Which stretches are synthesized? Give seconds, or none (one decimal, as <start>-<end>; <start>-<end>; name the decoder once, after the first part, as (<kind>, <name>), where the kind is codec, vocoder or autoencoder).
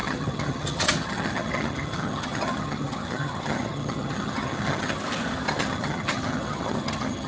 0.0-5.0 (vocoder, HiFi-GAN); 5.5-7.3